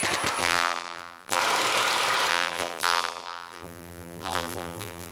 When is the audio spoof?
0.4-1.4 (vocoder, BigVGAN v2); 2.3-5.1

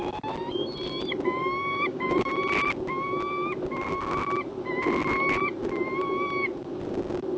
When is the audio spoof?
1.4-2.3 (codec, DAC)

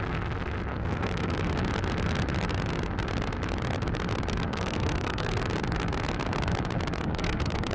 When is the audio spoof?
0.7-1.5 (codec, SNAC); 4.5-5.4; 7.0-7.7

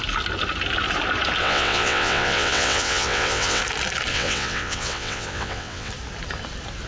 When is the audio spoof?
1.4-3.6 (vocoder, WaveNeXt); 4.1-5.9

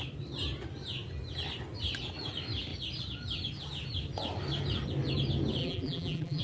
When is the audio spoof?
5.6-6.4 (vocoder, BigVGAN v2)

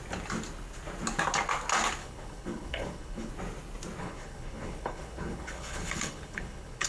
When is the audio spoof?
2.0-3.3 (codec, HILCodec); 4.0-6.9

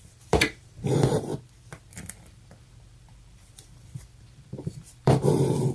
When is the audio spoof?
0.0-1.3 (vocoder, BigVGAN v2); 1.9-5.7

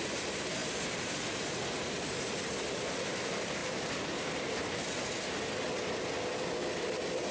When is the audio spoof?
none